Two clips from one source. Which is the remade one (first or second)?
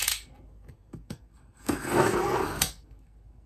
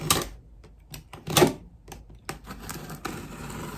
first